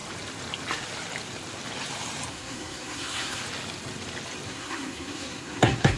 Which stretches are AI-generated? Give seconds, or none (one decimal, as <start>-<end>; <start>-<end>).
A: 2.3-3.4; 4.5-6.0